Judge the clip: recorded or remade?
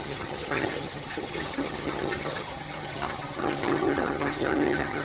remade